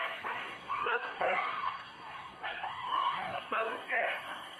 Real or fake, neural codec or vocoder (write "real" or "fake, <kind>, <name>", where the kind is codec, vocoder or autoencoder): fake, codec, SNAC